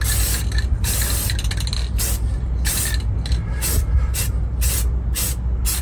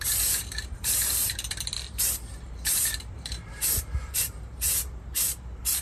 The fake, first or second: second